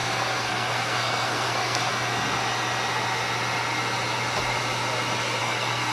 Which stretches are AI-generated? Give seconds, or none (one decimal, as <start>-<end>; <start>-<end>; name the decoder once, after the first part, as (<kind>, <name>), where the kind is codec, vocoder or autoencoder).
0.0-1.9 (codec, SNAC); 5.4-5.9